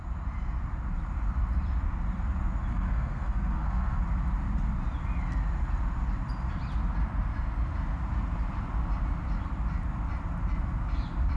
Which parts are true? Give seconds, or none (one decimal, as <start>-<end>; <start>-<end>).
0.0-2.7; 4.0-11.4